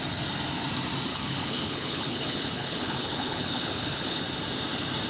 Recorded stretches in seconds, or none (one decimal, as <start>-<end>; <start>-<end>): 0.0-1.1; 4.2-5.1